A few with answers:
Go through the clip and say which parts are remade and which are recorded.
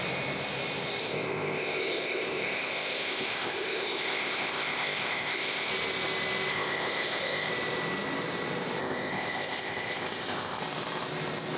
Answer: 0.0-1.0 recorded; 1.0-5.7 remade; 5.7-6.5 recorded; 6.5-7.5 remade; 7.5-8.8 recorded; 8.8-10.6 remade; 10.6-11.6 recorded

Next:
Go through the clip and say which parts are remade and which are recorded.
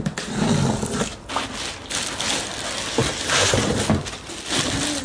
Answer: 0.0-5.0 recorded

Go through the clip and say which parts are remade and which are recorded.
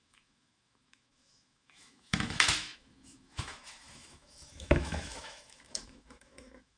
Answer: 0.0-6.8 remade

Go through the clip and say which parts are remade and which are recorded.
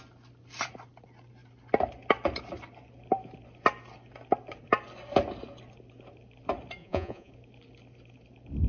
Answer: 0.0-6.8 recorded; 6.8-7.3 remade; 7.3-8.7 recorded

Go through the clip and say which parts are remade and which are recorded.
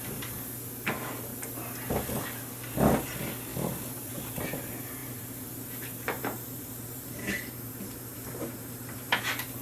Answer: 0.0-5.0 recorded; 5.0-9.2 remade; 9.2-9.6 recorded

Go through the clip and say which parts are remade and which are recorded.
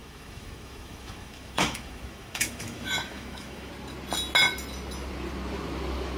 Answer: 0.0-3.7 remade; 3.7-6.2 recorded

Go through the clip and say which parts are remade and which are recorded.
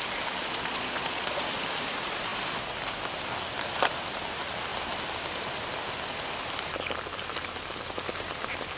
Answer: 0.0-0.4 recorded; 0.4-1.4 remade; 1.4-8.8 recorded